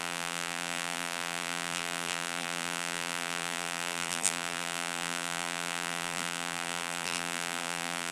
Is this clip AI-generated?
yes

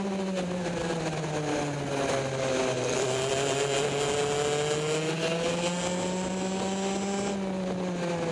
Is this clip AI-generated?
no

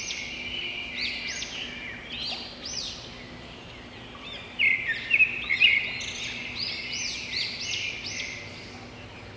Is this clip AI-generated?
no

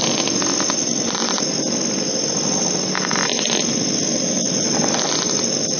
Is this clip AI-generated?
no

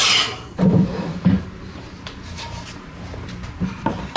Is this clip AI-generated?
yes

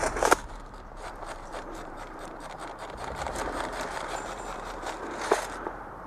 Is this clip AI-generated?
yes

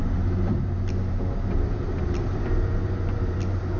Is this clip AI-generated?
yes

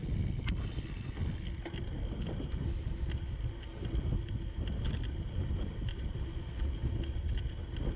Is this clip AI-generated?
no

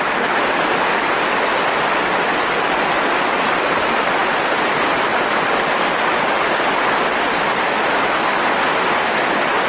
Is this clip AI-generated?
no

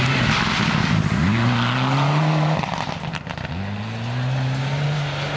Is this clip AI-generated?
no